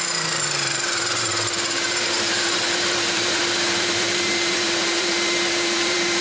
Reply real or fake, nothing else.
fake